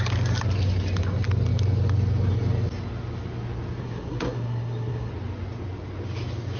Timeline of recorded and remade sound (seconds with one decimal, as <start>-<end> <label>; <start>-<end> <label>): 0.0-3.8 recorded; 3.8-5.1 remade; 5.1-6.6 recorded